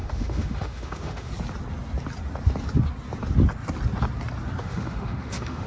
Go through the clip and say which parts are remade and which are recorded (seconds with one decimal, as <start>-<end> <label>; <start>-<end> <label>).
0.0-1.3 remade; 1.3-4.6 recorded; 4.6-5.7 remade